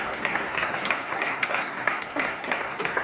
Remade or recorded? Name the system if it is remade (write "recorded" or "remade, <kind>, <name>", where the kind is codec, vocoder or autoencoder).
remade, codec, SNAC